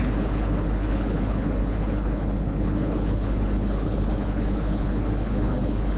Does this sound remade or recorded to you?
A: remade